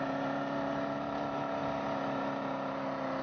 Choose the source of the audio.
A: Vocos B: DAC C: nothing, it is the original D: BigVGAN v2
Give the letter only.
C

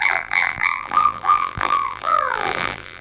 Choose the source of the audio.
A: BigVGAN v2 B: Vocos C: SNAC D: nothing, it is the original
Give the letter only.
A